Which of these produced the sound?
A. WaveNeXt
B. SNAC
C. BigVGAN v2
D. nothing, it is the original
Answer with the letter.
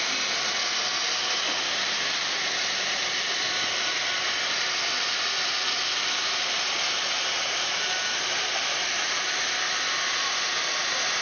C